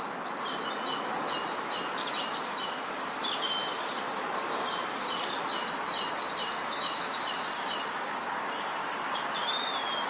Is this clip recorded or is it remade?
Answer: recorded